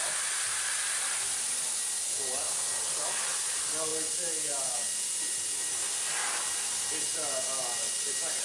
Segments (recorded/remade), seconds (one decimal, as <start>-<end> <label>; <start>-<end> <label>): 0.0-8.4 recorded